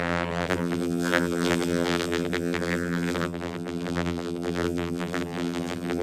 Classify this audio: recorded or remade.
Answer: remade